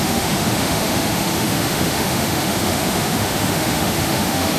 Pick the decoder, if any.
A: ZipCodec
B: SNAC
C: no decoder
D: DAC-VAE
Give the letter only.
D